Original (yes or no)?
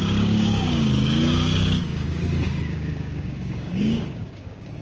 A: no